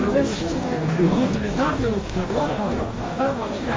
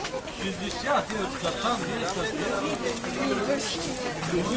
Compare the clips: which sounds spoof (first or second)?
first